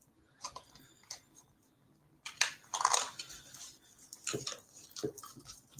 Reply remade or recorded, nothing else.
recorded